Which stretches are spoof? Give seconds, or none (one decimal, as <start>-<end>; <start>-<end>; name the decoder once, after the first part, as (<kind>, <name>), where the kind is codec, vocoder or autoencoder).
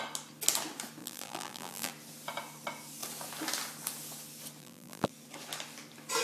1.0-1.9 (vocoder, BigVGAN v2); 4.6-5.1